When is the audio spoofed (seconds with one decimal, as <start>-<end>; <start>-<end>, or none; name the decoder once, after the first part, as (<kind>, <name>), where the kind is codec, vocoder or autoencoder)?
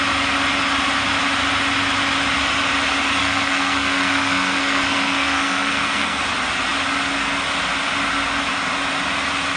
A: 3.2-6.2 (codec, SNAC)